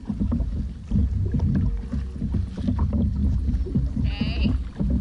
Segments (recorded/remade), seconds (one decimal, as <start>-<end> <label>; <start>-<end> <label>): 0.0-0.6 remade; 0.6-3.2 recorded; 3.2-4.1 remade; 4.1-5.0 recorded